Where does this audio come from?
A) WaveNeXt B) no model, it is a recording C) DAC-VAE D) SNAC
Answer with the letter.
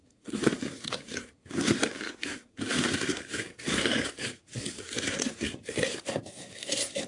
D